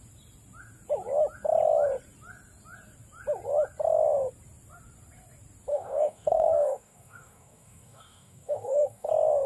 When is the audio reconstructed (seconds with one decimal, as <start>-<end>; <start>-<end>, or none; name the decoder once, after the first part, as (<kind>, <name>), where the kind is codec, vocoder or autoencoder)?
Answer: 5.7-9.1 (codec, DAC)

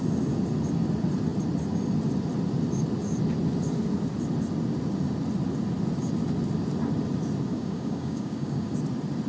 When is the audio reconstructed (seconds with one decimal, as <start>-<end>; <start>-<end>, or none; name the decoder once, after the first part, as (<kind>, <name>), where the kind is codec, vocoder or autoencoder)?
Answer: 7.5-8.7 (codec, DAC)

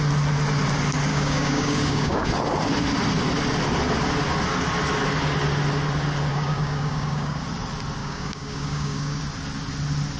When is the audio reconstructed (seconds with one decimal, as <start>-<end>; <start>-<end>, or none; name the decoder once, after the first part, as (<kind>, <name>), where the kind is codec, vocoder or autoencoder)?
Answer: 1.1-2.3 (codec, DAC); 6.3-7.4; 8.0-9.2

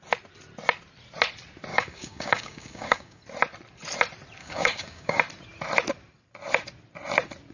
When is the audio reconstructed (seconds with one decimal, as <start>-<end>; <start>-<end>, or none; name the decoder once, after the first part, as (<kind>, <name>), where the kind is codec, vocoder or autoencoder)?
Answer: 1.7-3.2 (codec, DAC); 4.4-5.2

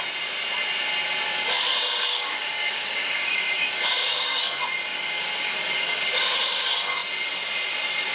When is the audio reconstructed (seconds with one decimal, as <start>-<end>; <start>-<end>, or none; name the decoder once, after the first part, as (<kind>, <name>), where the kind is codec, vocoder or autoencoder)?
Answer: 1.7-4.4 (codec, DAC); 4.9-6.1

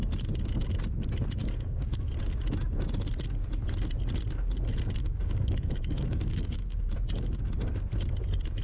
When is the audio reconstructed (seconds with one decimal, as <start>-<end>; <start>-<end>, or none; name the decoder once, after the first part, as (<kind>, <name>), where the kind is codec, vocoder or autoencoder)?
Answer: 1.4-2.1 (codec, DAC); 5.0-6.9